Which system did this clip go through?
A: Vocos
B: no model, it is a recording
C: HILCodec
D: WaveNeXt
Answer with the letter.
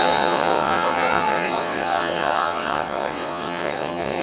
D